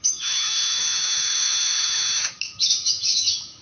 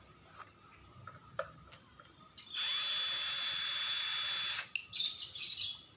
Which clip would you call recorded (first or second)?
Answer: second